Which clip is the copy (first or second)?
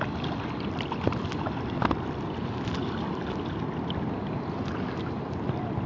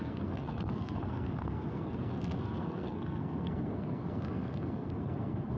second